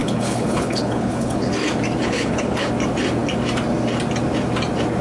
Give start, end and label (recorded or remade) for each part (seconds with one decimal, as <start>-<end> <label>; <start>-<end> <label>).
0.0-1.5 remade; 1.5-2.0 recorded; 2.0-2.7 remade; 2.7-5.0 recorded